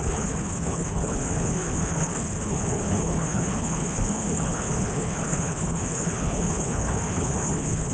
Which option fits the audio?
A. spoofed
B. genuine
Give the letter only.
A